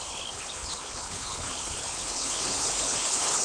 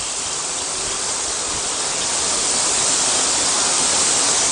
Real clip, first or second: second